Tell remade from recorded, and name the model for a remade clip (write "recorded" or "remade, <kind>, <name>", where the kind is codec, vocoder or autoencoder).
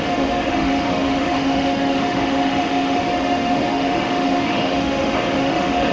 remade, autoencoder, DAC-VAE